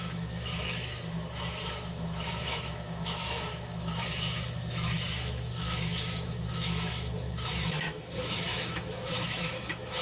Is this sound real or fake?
fake